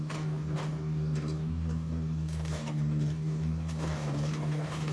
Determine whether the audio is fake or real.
fake